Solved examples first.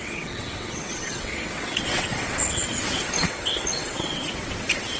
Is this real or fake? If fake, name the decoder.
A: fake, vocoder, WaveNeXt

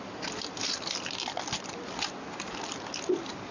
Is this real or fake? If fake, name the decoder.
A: real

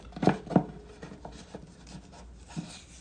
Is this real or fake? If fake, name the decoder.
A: real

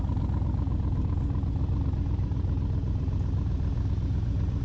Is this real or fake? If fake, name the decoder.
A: real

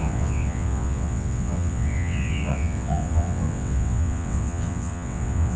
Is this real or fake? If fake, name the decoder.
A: fake, vocoder, WaveNeXt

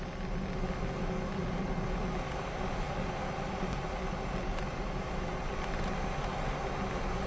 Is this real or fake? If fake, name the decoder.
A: real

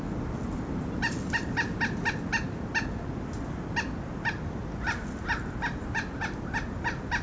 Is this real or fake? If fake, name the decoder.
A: real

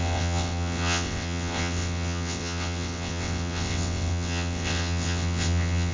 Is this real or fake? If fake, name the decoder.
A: fake, vocoder, WaveNeXt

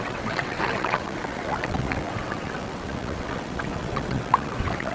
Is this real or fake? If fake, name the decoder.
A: fake, vocoder, WaveNeXt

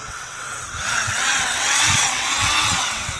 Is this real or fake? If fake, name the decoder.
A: fake, vocoder, WaveNeXt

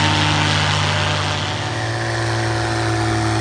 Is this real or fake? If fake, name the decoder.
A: real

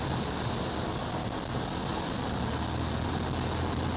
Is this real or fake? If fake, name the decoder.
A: real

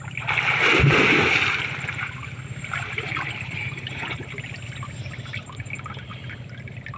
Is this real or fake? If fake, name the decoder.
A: real